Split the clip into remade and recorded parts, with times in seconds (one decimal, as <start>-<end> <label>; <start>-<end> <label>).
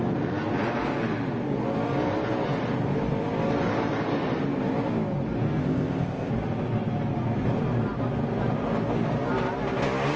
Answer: 0.0-5.6 recorded; 5.6-6.3 remade; 6.3-10.2 recorded